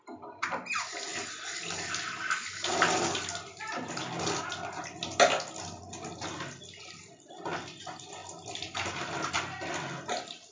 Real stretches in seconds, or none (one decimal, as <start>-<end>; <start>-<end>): 0.0-10.5